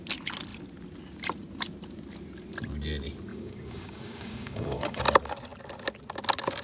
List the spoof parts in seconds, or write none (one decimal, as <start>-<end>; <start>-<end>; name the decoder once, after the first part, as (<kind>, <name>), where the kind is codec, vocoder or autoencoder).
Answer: 3.3-5.0 (codec, DAC)